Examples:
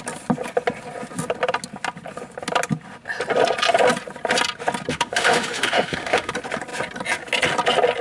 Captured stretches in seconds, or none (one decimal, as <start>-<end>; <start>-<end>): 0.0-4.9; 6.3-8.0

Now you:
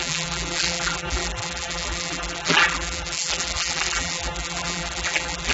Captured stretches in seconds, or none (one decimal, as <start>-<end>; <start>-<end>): none

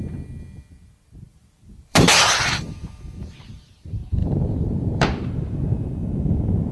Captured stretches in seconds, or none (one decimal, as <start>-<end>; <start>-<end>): 0.0-1.3; 2.2-4.2; 5.3-6.7

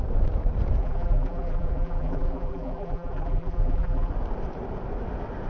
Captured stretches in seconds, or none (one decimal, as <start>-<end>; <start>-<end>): 0.0-0.8; 4.1-5.5

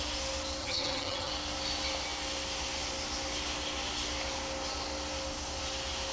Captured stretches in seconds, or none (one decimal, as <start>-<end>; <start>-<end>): 0.0-0.6; 1.3-6.1

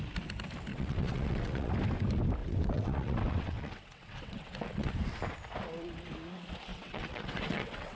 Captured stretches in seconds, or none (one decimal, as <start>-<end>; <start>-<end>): 0.0-0.7; 1.7-2.4; 4.9-6.7

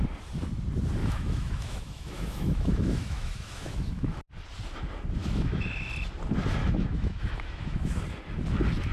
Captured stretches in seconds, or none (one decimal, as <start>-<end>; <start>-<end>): 0.0-1.0; 4.2-5.2; 5.9-6.6; 8.0-8.9